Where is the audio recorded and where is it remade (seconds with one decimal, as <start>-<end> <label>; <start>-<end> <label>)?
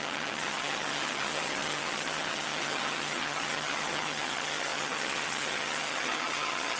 0.0-6.8 remade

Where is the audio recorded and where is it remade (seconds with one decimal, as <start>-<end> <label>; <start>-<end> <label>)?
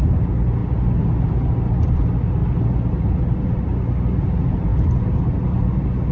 0.0-6.1 recorded